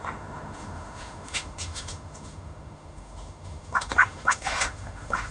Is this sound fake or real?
fake